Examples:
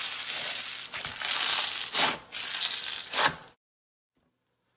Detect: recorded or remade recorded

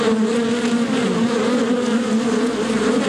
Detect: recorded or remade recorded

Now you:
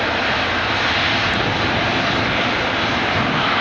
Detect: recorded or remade recorded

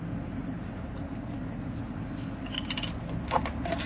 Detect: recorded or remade recorded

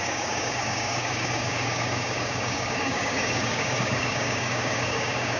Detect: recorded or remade remade